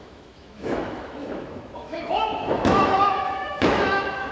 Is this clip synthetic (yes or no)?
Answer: yes